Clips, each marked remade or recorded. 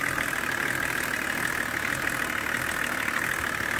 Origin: recorded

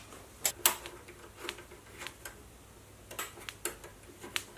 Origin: recorded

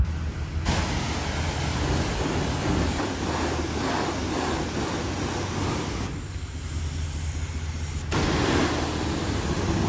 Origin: recorded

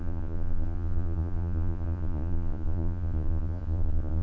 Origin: remade